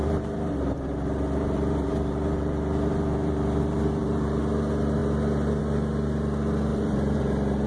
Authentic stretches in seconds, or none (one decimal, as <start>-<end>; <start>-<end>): 4.4-6.7; 7.2-7.7